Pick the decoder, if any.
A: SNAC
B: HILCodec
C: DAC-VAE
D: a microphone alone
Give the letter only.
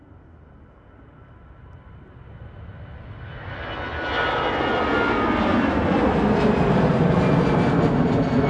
D